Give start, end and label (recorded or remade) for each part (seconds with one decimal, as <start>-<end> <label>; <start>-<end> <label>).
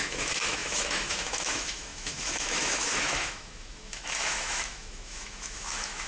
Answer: 0.0-6.1 remade